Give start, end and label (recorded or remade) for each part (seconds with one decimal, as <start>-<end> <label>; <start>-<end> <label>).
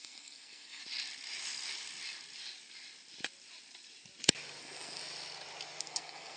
0.0-0.8 remade; 0.8-4.6 recorded; 4.6-5.0 remade; 5.0-5.8 recorded; 5.8-6.4 remade